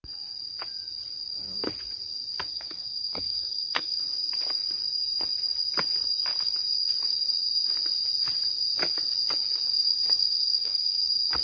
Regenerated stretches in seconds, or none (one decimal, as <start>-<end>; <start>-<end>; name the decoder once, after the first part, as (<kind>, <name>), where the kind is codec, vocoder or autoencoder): 2.5-4.0 (codec, SNAC); 9.9-11.0